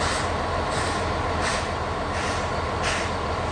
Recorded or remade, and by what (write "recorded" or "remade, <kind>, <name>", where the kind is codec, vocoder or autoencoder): recorded